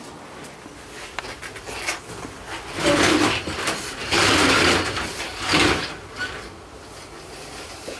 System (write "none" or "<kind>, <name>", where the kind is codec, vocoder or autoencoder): none